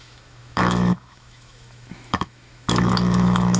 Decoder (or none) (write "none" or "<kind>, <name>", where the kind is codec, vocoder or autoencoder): autoencoder, DAC-VAE